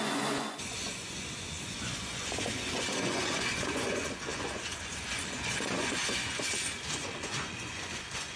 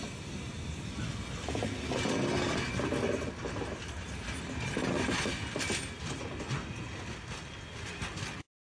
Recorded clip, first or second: second